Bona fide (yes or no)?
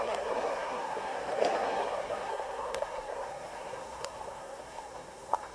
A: no